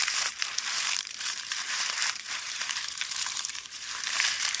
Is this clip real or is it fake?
fake